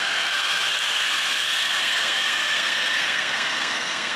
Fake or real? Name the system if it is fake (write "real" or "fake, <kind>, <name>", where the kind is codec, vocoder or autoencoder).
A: fake, codec, SNAC